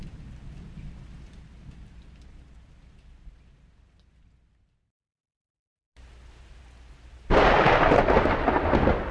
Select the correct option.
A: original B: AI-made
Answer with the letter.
A